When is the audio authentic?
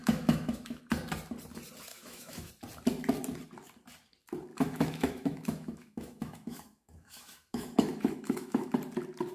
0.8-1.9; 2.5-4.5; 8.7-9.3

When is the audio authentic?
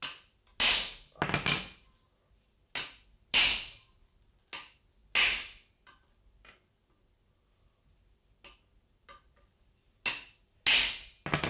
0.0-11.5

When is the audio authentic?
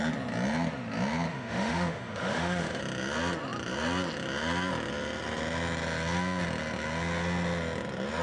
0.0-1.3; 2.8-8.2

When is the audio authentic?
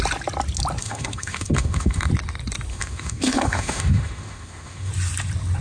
0.0-0.8; 2.1-2.7; 4.9-5.6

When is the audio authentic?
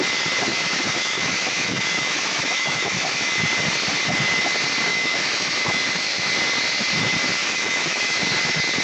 0.0-0.5; 3.3-4.9; 6.3-7.4; 8.2-8.8